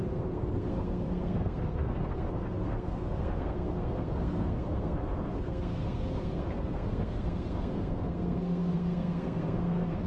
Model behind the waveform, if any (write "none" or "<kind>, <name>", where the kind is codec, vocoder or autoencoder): codec, SNAC